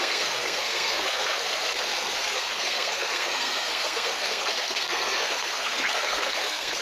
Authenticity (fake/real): fake